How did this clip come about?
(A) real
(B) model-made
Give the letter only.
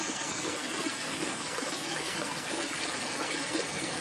B